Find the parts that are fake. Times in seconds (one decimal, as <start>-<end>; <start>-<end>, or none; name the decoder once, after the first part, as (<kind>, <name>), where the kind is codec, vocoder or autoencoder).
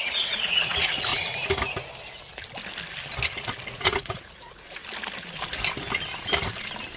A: 0.0-1.1 (vocoder, Vocos); 3.7-4.8